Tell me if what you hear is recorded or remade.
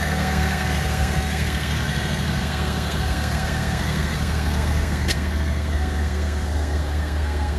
remade